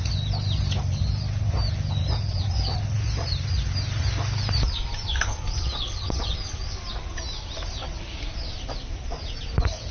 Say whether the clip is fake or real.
real